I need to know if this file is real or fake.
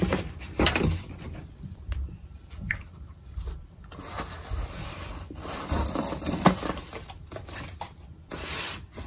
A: fake